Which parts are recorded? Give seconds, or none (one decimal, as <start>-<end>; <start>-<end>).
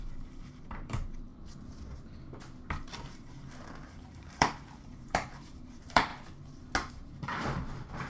1.3-3.7; 6.1-6.9